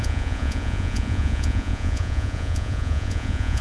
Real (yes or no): no